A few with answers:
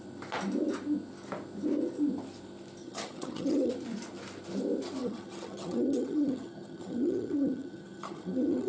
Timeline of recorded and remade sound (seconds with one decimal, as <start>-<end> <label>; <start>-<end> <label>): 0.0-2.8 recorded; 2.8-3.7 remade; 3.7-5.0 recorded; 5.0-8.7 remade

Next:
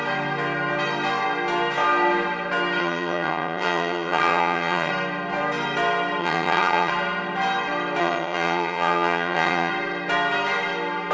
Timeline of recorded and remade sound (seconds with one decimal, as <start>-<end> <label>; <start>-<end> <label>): 0.0-2.8 recorded; 2.8-4.9 remade; 4.9-6.2 recorded; 6.2-6.9 remade; 6.9-8.0 recorded; 8.0-9.7 remade; 9.7-11.1 recorded

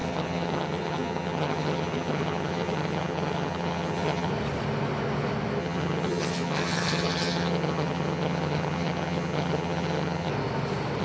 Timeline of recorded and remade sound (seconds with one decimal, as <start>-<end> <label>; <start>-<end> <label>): 0.0-4.3 remade; 4.3-5.6 recorded; 5.6-10.3 remade; 10.3-11.0 recorded

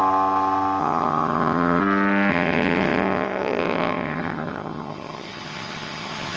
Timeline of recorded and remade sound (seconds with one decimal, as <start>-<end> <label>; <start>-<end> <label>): 0.0-0.8 recorded; 0.8-1.8 remade; 1.8-2.3 recorded; 2.3-6.4 remade

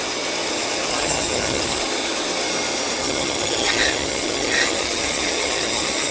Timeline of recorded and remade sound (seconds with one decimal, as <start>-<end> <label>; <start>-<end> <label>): 0.0-0.9 recorded; 0.9-1.8 remade; 1.8-3.0 recorded; 3.0-6.1 remade

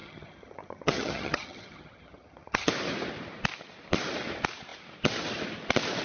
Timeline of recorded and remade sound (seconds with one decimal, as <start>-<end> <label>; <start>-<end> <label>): 0.0-2.7 remade; 2.7-6.0 recorded

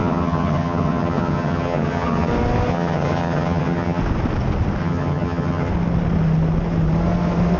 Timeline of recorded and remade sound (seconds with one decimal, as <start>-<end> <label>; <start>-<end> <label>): 0.0-2.3 remade; 2.3-2.7 recorded; 2.7-4.0 remade; 4.0-4.8 recorded; 4.8-5.7 remade; 5.7-7.6 recorded